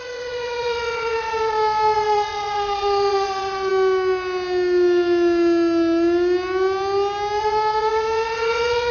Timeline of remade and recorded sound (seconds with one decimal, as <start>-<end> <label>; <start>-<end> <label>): 0.0-3.7 remade; 3.7-7.4 recorded; 7.4-8.9 remade